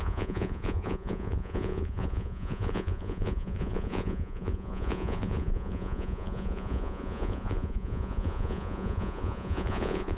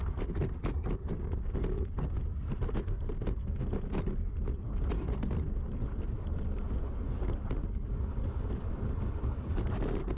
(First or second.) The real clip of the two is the second